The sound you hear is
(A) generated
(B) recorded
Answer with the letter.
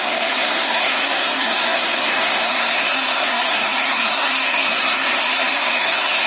A